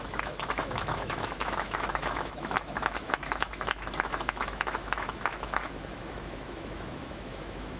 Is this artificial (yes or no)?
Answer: yes